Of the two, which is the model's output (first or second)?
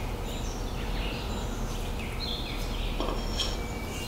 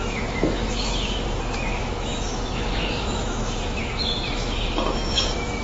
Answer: second